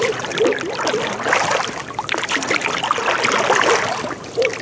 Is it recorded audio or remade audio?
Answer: recorded